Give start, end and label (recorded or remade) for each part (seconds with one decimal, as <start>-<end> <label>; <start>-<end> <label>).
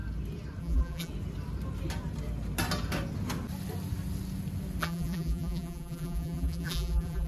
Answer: 0.0-0.6 recorded; 0.6-1.1 remade; 1.1-4.8 recorded; 4.8-7.3 remade